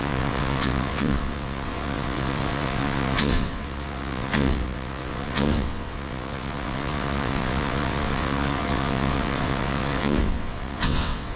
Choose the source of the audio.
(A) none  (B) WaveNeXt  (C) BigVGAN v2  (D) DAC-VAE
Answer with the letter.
B